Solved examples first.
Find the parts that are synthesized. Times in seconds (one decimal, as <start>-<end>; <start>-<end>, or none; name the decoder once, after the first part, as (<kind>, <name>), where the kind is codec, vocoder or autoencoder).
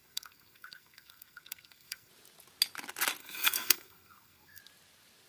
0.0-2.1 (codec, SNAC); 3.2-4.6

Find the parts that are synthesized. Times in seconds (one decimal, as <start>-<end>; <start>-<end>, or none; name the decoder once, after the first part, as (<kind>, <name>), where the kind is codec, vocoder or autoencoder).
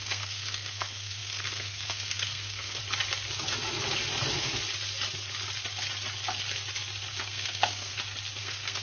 0.0-2.8 (codec, SNAC); 7.2-7.9; 8.4-8.8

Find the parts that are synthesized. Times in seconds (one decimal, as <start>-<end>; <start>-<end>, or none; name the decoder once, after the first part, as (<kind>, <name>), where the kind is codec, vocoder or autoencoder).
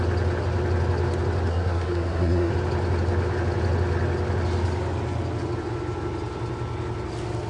1.5-2.5 (codec, SNAC)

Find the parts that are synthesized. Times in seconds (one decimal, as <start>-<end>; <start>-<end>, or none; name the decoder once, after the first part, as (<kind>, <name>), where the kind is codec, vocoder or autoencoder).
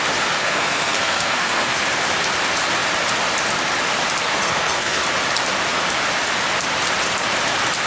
0.4-1.8 (codec, SNAC); 4.3-5.0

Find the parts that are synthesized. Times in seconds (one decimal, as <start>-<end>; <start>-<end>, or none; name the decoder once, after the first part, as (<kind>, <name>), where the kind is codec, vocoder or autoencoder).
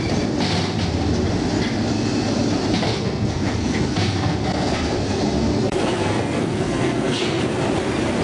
2.9-7.4 (codec, SNAC)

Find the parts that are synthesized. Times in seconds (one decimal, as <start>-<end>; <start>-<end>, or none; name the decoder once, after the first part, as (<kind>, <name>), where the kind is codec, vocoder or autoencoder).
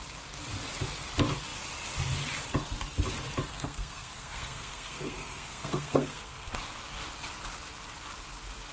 3.5-6.5 (codec, SNAC)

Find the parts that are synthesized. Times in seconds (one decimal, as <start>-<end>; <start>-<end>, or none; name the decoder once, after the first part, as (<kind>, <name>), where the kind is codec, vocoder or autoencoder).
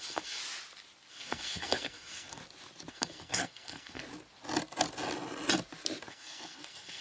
0.0-0.4 (codec, SNAC); 1.1-2.4; 2.9-4.0; 6.1-7.0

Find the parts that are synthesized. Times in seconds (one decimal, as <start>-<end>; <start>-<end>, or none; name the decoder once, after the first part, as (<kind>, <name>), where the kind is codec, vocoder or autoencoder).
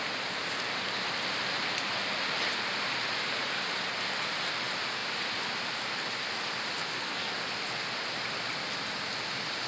6.8-7.3 (codec, SNAC)